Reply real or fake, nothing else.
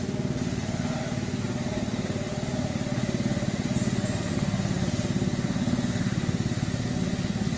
real